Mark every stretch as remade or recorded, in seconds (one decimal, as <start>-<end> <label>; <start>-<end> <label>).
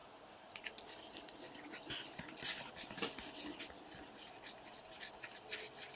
0.0-6.0 recorded